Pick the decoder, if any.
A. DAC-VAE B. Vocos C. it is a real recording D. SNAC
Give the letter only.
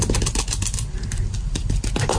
C